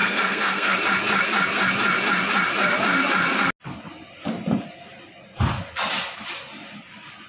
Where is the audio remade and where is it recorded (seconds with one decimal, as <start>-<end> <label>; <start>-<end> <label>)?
0.0-0.8 remade; 0.8-7.3 recorded